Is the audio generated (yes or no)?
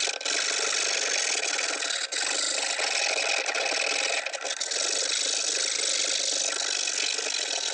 no